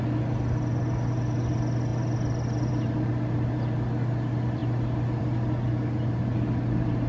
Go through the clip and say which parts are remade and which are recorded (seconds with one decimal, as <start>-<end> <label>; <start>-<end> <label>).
0.0-7.1 recorded